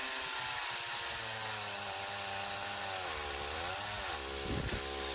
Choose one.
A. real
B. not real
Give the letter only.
A